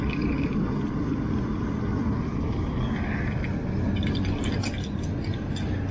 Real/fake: real